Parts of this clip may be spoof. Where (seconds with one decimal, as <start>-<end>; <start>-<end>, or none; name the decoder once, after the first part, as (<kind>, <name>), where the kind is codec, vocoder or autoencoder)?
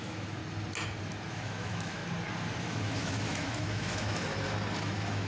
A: 0.0-0.4 (autoencoder, DAC-VAE); 1.3-2.0; 2.6-4.3; 4.8-5.3